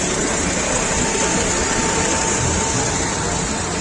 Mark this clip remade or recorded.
recorded